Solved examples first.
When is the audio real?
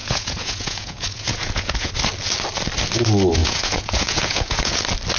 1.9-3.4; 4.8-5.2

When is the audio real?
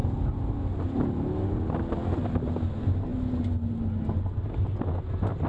0.0-5.5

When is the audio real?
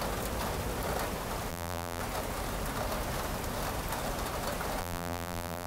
0.0-1.5; 2.0-4.8